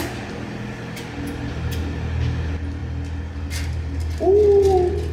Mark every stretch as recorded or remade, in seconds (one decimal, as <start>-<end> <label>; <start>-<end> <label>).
0.0-5.1 recorded